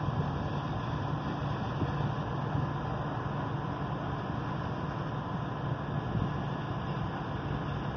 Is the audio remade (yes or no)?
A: no